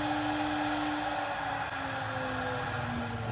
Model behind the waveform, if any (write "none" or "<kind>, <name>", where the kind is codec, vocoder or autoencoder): none